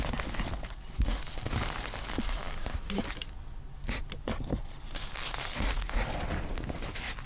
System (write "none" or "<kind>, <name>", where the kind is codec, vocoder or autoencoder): none